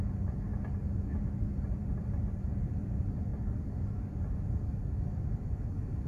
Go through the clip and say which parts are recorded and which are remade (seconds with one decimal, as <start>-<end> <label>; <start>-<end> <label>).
0.0-0.5 remade; 0.5-1.2 recorded; 1.2-3.3 remade; 3.3-6.1 recorded